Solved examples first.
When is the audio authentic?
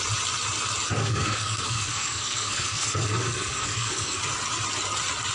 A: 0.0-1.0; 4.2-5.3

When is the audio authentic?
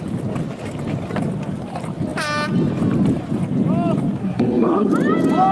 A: 0.0-4.2; 4.9-5.5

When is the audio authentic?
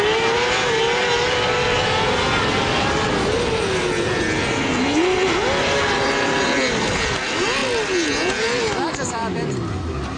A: 0.0-10.2